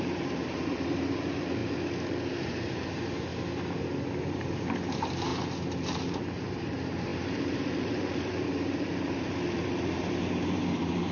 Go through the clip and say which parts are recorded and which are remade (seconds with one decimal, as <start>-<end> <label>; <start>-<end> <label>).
0.0-1.6 remade; 1.6-2.3 recorded; 2.3-3.3 remade; 3.3-4.2 recorded; 4.2-11.1 remade